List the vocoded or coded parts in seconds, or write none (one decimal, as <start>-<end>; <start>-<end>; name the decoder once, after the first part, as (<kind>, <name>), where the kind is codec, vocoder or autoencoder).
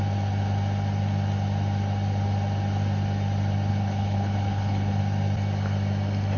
3.7-5.0 (codec, HILCodec)